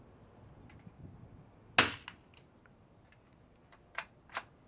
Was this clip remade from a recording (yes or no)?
no